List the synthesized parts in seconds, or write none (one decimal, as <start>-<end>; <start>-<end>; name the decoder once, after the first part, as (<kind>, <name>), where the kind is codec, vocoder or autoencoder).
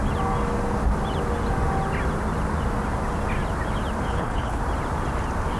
4.1-4.6 (codec, HILCodec)